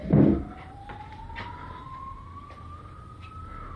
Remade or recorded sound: remade